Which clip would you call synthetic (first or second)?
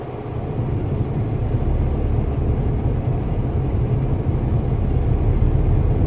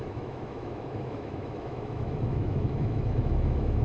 second